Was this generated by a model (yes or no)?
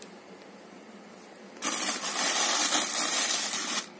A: no